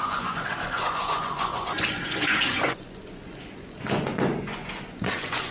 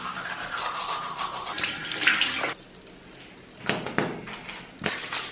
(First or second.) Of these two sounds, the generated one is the first